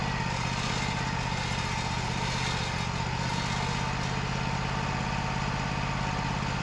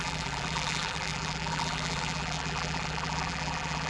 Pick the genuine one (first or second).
first